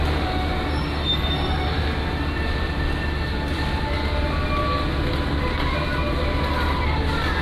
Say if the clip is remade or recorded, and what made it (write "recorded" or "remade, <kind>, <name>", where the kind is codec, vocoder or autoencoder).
recorded